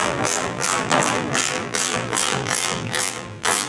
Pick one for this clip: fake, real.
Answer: fake